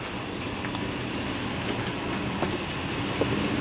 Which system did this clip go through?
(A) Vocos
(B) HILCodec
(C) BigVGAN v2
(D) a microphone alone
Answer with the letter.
D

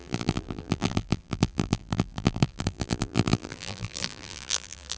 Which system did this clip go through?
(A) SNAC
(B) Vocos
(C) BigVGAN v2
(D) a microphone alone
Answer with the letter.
C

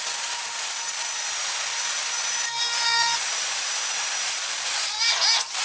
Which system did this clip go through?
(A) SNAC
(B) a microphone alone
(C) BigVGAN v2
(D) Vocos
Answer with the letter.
B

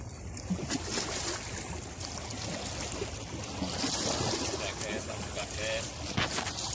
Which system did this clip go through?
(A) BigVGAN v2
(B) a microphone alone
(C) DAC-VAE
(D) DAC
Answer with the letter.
B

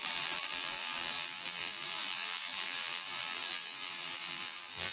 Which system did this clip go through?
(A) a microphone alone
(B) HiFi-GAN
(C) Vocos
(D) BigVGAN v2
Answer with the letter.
D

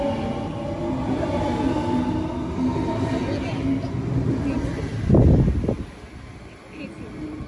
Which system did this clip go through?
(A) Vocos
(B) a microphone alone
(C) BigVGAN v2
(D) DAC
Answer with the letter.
B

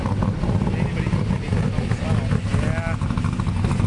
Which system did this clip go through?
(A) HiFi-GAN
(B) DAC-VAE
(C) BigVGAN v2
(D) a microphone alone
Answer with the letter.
D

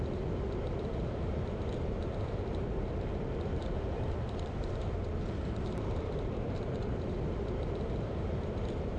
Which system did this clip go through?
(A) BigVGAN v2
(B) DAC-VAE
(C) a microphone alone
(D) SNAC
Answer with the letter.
A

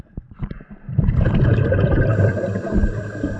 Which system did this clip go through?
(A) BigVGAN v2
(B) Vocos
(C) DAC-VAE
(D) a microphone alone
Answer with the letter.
A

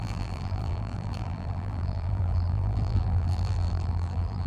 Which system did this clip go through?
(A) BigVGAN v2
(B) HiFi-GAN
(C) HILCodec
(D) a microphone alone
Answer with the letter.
A